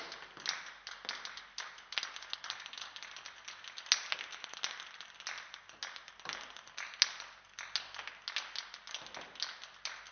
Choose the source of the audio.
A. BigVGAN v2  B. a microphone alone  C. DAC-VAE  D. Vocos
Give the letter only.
B